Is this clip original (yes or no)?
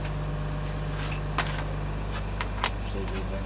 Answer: yes